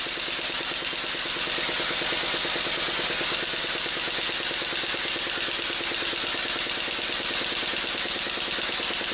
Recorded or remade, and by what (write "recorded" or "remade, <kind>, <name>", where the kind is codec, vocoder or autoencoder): recorded